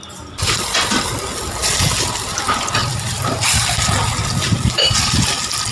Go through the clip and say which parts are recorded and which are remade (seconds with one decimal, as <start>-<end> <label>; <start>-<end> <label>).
0.0-2.8 recorded; 2.8-3.8 remade; 3.8-5.7 recorded